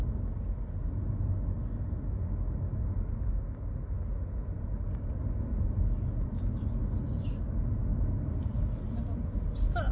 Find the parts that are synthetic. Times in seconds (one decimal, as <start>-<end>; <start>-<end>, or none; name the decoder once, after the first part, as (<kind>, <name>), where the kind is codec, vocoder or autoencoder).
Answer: 7.9-9.0 (vocoder, BigVGAN v2)